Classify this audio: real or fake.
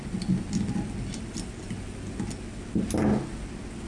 real